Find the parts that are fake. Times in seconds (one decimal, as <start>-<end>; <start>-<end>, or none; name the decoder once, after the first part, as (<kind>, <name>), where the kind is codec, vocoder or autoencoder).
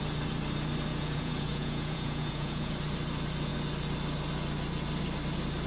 0.9-2.7 (vocoder, Vocos)